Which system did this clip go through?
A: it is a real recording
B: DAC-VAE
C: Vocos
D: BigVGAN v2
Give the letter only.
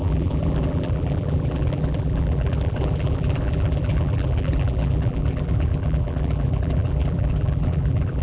D